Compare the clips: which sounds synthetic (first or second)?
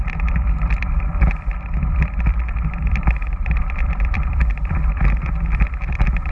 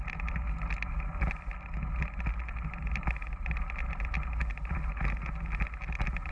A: first